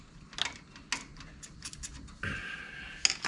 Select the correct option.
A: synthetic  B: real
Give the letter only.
B